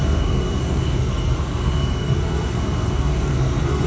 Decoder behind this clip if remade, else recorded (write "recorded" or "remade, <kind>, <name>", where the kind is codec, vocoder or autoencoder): remade, codec, SNAC